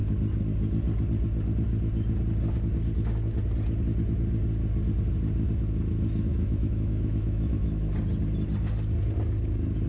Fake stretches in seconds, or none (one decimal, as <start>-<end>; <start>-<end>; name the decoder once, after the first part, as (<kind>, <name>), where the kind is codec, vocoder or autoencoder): 6.3-7.9 (autoencoder, DAC-VAE)